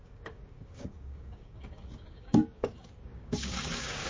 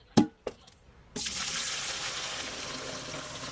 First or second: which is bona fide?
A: second